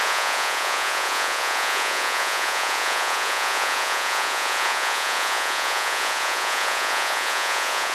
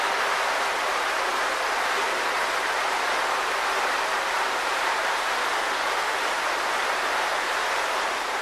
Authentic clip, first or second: second